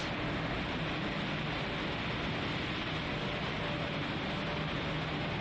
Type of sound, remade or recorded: recorded